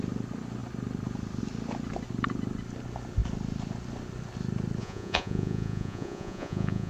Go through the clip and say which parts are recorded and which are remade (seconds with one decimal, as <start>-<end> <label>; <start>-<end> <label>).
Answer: 0.0-4.8 recorded; 4.8-6.9 remade